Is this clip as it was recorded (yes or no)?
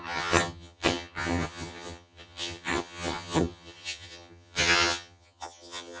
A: no